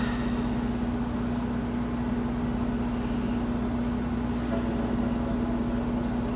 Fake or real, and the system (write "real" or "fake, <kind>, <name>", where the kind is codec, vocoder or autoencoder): real